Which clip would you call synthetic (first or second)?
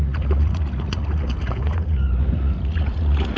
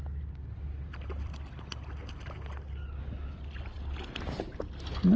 first